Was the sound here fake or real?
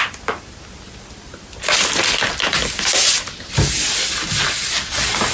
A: real